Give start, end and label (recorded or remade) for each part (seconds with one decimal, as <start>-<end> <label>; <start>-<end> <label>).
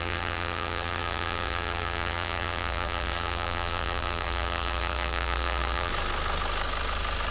0.0-5.9 remade; 5.9-7.3 recorded